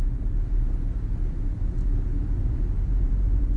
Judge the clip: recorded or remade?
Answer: recorded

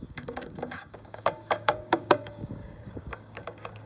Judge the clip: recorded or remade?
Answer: remade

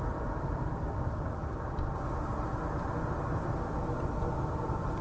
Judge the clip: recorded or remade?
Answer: recorded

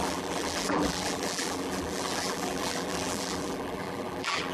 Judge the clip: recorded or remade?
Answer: remade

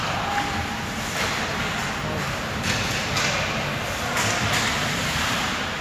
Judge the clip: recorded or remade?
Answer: recorded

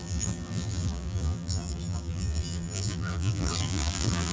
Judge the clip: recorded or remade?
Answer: remade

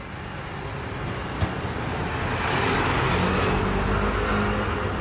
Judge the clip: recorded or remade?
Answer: recorded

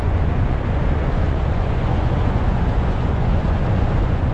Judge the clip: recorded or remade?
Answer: remade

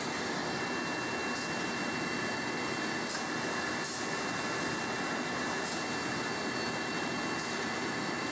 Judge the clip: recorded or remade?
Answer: recorded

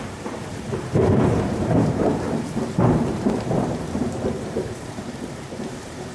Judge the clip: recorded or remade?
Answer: remade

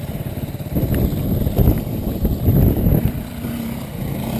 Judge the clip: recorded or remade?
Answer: recorded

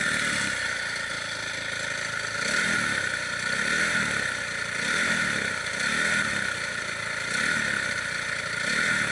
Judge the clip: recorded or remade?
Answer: recorded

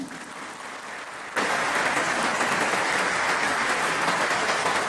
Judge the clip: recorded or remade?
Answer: recorded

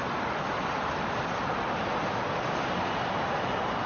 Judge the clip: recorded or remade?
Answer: remade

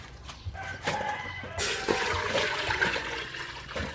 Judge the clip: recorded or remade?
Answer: remade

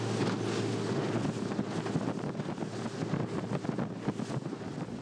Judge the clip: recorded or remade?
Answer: recorded